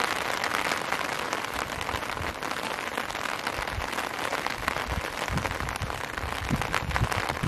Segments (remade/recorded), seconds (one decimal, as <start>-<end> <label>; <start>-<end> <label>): 0.0-7.5 recorded

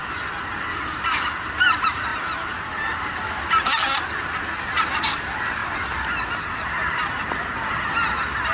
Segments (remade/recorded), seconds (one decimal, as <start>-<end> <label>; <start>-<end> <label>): 0.0-8.5 recorded

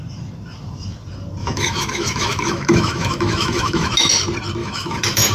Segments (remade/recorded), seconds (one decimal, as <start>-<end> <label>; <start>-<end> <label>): 0.0-1.4 recorded; 1.4-4.1 remade; 4.1-4.6 recorded; 4.6-5.3 remade

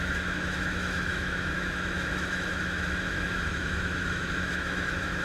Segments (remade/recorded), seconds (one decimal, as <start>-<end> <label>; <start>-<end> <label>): 0.0-5.2 remade

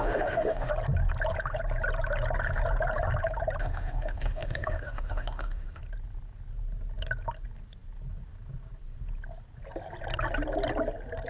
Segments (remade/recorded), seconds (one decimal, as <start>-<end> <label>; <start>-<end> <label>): 0.0-0.7 remade; 0.7-3.6 recorded; 3.6-5.8 remade; 5.8-11.3 recorded

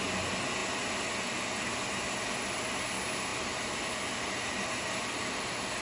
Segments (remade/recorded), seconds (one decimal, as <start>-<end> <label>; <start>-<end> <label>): 0.0-5.8 recorded